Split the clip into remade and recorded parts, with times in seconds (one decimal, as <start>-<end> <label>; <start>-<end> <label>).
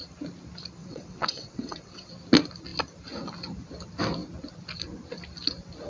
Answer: 0.0-0.8 recorded; 0.8-2.1 remade; 2.1-5.9 recorded